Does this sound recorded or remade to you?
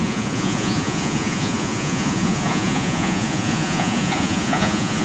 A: remade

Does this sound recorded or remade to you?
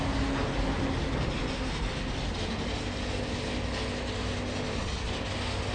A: recorded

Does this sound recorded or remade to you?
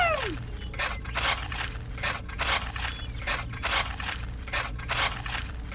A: recorded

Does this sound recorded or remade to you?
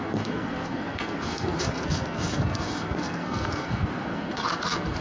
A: remade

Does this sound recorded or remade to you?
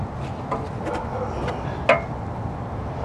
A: recorded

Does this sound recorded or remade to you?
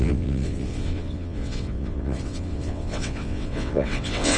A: remade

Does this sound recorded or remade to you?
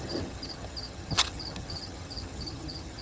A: remade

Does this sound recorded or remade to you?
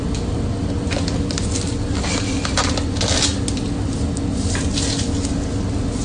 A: recorded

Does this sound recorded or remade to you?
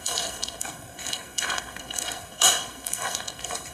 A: remade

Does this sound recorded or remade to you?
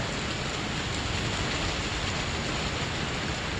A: recorded